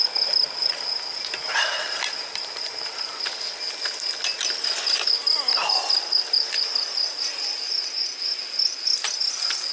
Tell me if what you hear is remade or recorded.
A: recorded